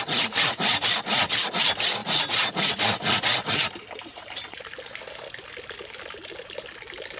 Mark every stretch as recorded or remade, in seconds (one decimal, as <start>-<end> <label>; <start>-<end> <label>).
0.0-2.0 recorded; 2.0-2.8 remade; 2.8-7.2 recorded

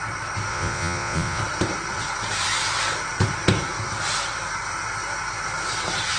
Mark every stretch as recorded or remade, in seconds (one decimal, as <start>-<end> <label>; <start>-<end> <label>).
0.0-0.5 recorded; 0.5-1.4 remade; 1.4-6.2 recorded

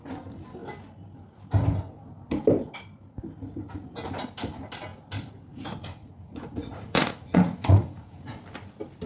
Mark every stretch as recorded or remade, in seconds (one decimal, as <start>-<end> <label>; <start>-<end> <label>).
0.0-6.0 recorded; 6.0-8.4 remade; 8.4-9.1 recorded

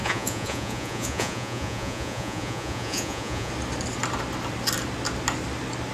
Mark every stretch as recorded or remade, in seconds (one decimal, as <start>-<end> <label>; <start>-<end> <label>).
0.0-3.5 remade; 3.5-5.9 recorded

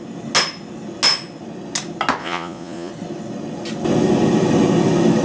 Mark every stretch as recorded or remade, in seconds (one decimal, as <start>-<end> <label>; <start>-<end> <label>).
0.0-2.2 recorded; 2.2-2.9 remade; 2.9-5.2 recorded

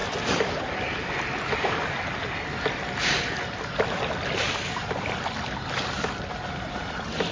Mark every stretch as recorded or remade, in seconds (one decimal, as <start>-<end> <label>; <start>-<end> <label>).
0.0-7.3 recorded